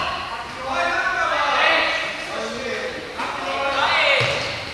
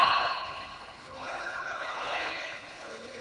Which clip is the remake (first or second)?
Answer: second